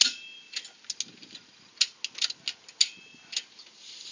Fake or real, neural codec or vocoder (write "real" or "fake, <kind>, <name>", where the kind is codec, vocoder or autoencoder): real